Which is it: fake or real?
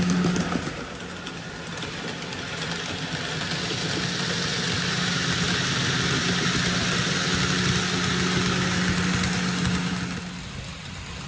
real